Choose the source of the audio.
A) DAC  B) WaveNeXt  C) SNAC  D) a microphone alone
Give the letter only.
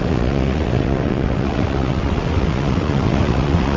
B